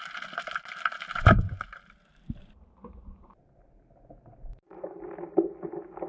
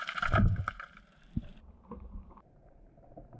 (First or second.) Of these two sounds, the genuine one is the first